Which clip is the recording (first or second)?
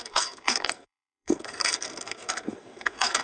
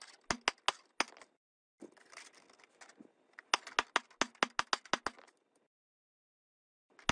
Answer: second